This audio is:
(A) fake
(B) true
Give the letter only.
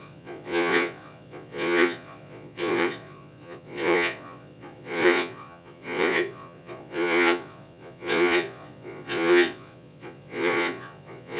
A